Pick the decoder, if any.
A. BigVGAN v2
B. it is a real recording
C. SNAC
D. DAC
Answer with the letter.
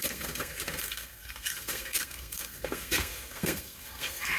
C